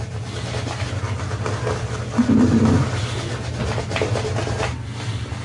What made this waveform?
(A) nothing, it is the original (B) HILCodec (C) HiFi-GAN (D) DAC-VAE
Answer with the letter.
A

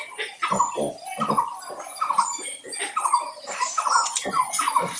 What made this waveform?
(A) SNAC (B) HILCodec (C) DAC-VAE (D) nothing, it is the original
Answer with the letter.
D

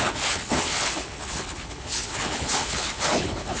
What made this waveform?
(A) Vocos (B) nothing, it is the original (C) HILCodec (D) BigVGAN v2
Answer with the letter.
C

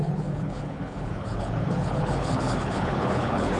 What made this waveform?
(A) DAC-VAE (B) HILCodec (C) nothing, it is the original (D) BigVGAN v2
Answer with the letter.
B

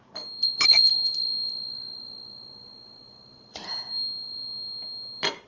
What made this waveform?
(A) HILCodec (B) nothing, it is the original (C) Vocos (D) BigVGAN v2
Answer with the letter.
B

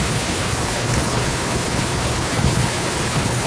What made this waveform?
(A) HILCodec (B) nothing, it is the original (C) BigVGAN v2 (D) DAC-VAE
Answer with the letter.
A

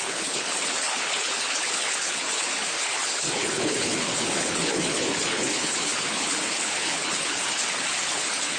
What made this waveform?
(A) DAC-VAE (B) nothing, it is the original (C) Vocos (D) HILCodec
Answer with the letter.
D